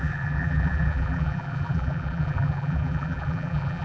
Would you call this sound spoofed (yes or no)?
yes